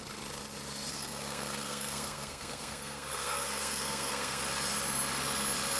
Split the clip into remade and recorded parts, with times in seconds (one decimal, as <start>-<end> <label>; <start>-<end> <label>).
0.0-0.9 recorded; 0.9-4.4 remade; 4.4-5.8 recorded